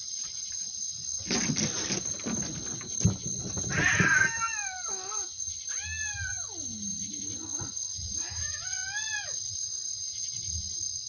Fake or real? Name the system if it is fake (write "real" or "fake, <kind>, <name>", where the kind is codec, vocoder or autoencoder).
real